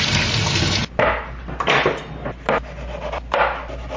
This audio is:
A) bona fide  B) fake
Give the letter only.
A